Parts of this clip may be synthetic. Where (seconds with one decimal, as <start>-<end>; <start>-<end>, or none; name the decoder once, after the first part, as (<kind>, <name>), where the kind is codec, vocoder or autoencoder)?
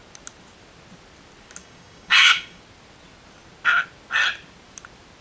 1.6-2.6 (codec, DAC)